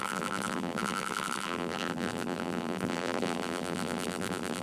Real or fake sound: fake